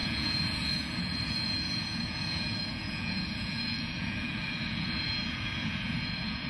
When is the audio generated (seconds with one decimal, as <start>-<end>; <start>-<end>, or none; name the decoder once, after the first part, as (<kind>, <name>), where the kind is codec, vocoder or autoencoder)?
0.0-6.5 (vocoder, Vocos)